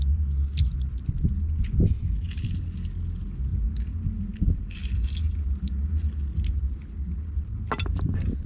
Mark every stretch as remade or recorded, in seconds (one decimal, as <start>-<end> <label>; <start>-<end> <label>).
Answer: 0.0-8.5 recorded